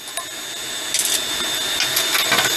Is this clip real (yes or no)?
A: yes